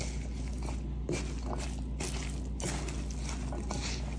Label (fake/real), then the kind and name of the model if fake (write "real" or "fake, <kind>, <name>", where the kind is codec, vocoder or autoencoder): real